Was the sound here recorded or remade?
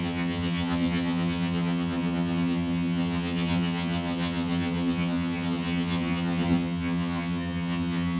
remade